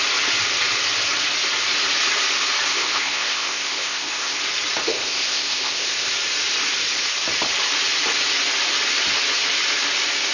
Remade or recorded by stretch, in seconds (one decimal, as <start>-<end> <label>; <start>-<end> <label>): 0.0-2.7 recorded; 2.7-4.4 remade; 4.4-4.9 recorded; 4.9-6.1 remade; 6.1-10.3 recorded